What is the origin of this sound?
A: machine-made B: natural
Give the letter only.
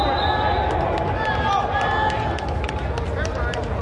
B